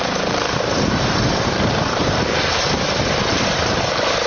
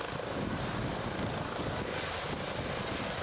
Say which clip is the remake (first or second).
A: first